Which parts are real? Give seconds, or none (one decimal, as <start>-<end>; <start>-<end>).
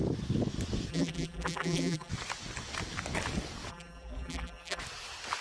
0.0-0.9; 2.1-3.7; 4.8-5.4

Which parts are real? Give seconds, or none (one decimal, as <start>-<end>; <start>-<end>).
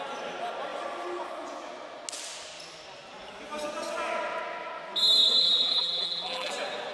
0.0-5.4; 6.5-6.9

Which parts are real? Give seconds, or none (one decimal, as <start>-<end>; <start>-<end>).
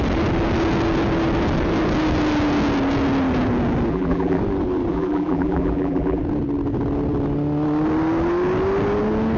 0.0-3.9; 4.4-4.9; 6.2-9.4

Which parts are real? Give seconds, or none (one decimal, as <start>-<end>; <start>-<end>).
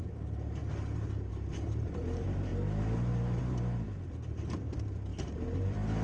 0.6-1.3; 2.5-3.4; 5.1-5.6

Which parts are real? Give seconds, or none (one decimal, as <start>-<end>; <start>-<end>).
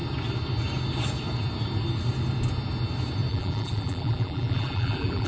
0.0-3.3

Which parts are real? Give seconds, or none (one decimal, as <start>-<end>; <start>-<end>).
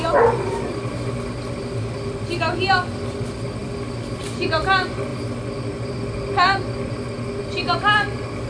0.0-8.5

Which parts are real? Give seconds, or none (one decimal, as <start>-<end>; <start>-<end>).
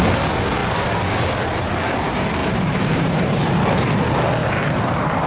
0.0-2.4; 4.0-4.4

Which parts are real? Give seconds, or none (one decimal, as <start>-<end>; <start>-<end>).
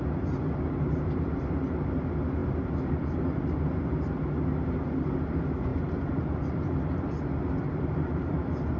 0.0-2.4; 4.1-5.7